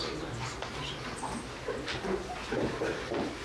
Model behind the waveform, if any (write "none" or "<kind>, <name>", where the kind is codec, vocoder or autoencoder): none